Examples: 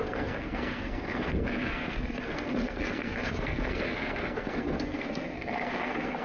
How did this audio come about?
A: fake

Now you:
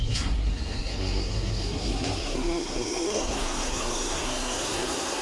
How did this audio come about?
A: fake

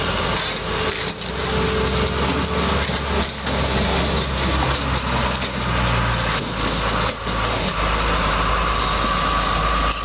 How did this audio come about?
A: real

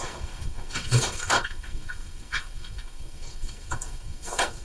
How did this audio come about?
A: fake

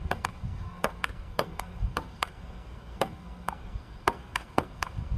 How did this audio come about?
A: fake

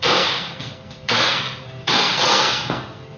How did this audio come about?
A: fake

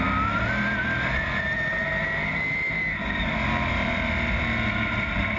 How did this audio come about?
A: real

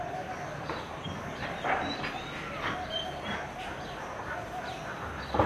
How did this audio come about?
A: real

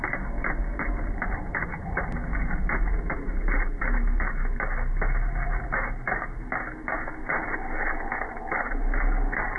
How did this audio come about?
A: real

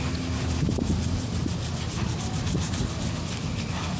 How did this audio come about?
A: real